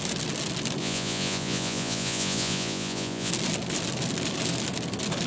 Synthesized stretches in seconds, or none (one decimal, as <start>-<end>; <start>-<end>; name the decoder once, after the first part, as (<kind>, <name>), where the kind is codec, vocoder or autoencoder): 0.8-3.3 (vocoder, Vocos)